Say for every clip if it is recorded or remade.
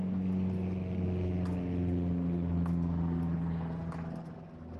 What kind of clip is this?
recorded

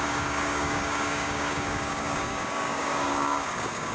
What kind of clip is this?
remade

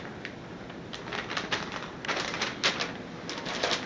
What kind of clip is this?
recorded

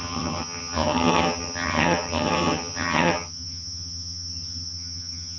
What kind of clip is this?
remade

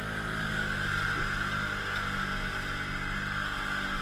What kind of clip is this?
recorded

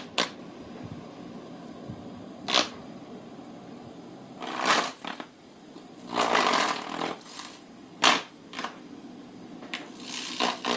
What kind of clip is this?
recorded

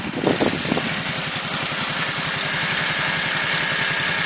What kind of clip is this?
recorded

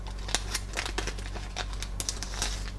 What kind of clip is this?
recorded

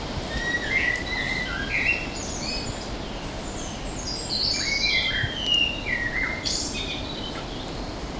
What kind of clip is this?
recorded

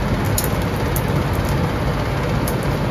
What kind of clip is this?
recorded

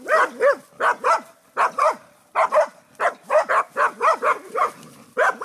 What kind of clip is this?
recorded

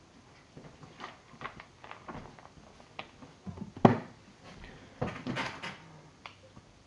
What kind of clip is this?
recorded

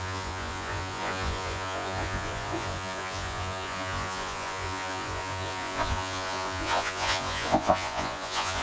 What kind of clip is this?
remade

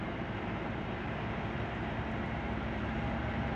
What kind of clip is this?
remade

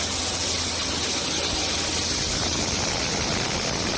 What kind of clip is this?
recorded